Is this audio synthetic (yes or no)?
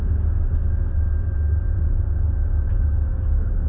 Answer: no